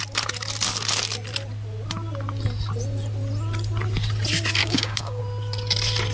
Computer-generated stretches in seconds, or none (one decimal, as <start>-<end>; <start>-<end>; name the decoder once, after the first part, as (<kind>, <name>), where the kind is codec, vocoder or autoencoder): 4.6-5.2 (codec, DAC)